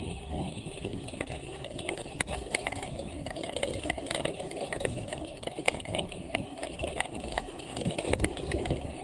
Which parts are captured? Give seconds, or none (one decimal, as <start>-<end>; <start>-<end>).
none